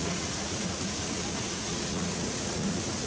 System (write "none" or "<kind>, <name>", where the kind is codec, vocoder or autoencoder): vocoder, Vocos